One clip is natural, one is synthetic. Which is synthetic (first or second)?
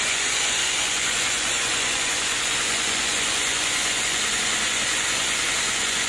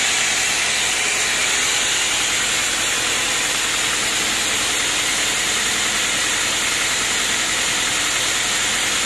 first